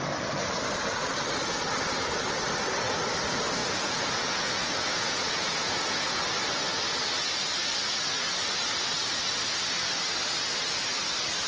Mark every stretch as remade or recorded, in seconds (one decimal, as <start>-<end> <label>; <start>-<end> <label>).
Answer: 0.0-3.6 recorded; 3.6-6.2 remade; 6.2-11.5 recorded